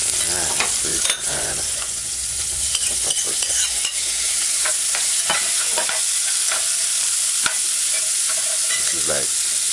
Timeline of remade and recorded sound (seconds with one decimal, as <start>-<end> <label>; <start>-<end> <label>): 0.0-0.9 recorded; 0.9-6.0 remade; 6.0-7.8 recorded; 7.8-8.8 remade; 8.8-9.7 recorded